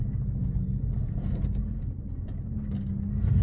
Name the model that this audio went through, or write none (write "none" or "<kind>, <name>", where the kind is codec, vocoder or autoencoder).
none